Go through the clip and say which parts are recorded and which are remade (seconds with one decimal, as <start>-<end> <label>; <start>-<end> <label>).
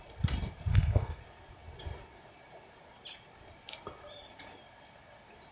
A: 0.0-0.7 recorded; 0.7-1.2 remade; 1.2-5.5 recorded